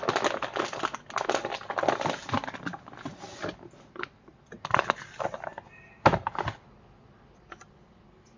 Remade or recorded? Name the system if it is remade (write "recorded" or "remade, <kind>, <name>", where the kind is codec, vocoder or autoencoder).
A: recorded